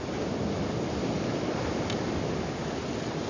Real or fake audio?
real